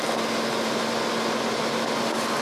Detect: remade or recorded recorded